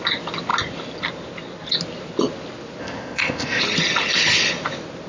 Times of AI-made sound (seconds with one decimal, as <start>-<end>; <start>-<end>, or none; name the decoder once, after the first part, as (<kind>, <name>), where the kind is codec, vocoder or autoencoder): 2.8-3.6 (codec, ZipCodec)